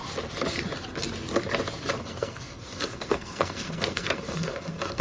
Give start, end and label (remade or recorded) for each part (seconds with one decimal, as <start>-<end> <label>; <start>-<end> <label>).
0.0-2.0 recorded; 2.0-5.0 remade